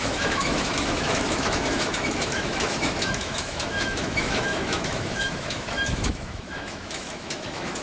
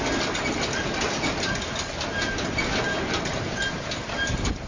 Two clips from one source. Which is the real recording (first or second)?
second